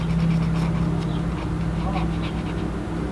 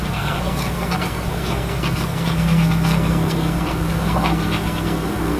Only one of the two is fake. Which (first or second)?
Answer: second